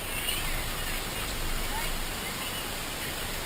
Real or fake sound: real